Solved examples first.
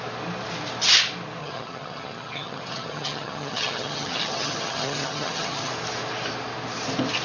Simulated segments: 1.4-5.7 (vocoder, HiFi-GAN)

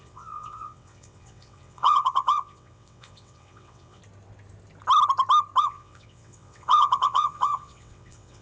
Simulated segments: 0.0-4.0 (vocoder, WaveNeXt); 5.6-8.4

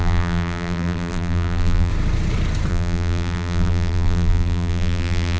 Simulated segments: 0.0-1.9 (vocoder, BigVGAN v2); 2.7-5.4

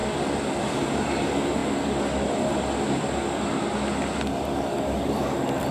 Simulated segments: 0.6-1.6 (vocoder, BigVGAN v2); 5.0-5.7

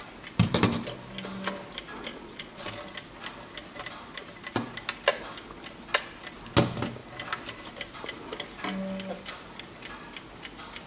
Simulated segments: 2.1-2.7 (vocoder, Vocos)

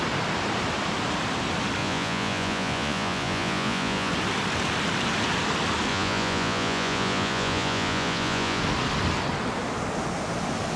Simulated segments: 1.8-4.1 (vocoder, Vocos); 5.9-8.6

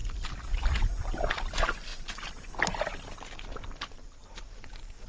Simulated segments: none